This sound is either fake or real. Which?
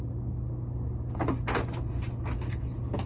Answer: real